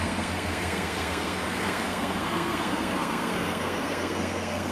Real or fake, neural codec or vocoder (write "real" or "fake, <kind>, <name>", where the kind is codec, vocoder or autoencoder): fake, codec, SNAC